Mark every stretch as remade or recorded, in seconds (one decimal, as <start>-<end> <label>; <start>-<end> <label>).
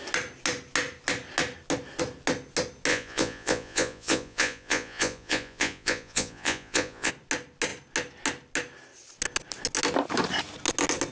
0.0-2.9 recorded; 2.9-7.1 remade; 7.1-11.1 recorded